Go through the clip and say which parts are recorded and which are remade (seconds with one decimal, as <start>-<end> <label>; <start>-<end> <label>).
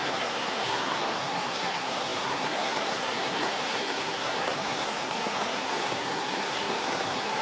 0.0-7.4 remade